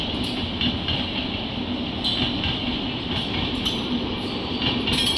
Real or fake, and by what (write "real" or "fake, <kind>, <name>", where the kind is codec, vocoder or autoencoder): real